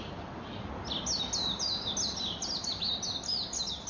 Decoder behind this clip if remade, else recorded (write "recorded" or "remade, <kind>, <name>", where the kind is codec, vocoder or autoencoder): recorded